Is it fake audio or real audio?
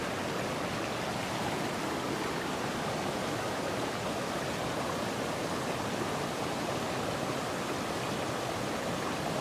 real